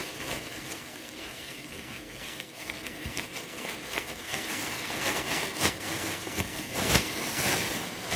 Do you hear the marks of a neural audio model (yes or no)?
yes